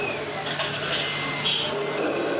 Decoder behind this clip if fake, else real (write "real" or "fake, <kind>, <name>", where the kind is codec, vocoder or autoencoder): real